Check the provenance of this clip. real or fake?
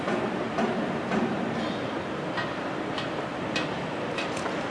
fake